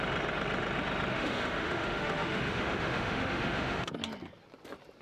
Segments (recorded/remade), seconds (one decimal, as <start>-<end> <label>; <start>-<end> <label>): 0.0-1.1 recorded; 1.1-3.9 remade; 3.9-5.0 recorded